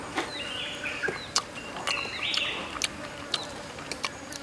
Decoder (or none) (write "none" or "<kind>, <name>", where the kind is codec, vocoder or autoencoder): none